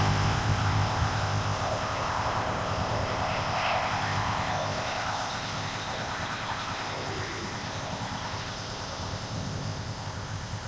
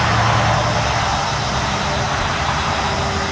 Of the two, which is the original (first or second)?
second